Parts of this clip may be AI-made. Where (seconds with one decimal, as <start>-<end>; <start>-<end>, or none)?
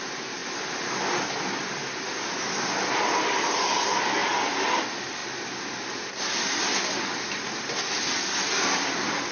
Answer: none